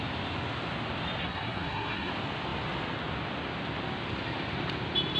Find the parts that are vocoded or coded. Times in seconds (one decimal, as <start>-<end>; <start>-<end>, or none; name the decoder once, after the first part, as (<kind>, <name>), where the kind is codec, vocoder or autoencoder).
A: 1.2-2.1 (codec, SNAC)